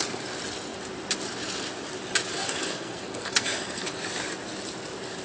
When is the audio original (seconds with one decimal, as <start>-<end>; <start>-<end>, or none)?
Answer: 0.0-2.3; 4.0-5.2